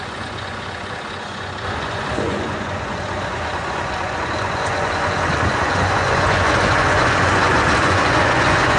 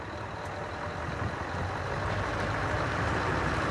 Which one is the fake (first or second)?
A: first